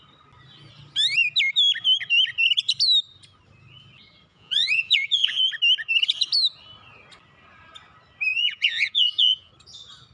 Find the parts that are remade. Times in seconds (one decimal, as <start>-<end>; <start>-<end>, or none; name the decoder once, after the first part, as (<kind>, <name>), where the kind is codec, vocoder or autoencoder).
4.3-5.5 (vocoder, Vocos); 8.3-9.5